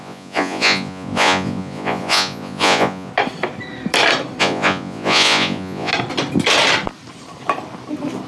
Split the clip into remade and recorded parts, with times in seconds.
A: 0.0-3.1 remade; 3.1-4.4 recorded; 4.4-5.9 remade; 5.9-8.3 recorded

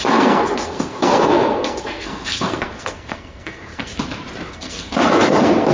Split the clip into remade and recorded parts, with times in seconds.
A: 0.0-3.9 remade; 3.9-4.5 recorded; 4.5-5.7 remade

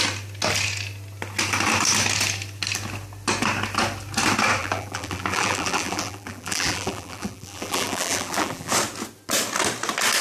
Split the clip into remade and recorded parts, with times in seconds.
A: 0.0-4.6 recorded; 4.6-8.7 remade; 8.7-10.2 recorded

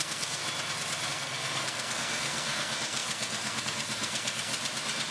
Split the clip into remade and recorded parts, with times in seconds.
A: 0.0-0.4 remade; 0.4-1.1 recorded; 1.1-4.5 remade; 4.5-5.1 recorded

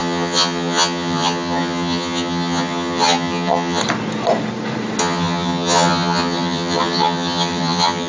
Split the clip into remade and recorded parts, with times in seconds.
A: 0.0-3.8 remade; 3.8-5.0 recorded; 5.0-8.1 remade

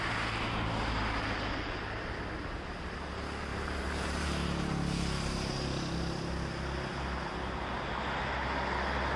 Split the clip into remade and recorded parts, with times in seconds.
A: 0.0-3.5 recorded; 3.5-4.7 remade; 4.7-9.2 recorded

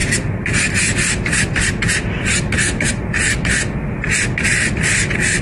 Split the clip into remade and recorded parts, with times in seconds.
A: 0.0-5.4 recorded

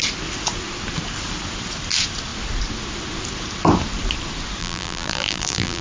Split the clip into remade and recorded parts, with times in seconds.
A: 0.0-4.6 recorded; 4.6-5.8 remade